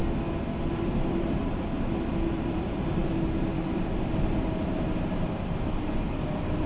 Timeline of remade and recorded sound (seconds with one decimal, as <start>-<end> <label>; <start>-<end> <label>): 0.0-0.7 recorded; 0.7-1.4 remade; 1.4-2.1 recorded; 2.1-3.0 remade; 3.0-3.6 recorded; 3.6-6.7 remade